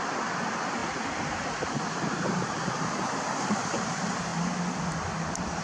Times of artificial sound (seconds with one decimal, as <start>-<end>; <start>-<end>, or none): none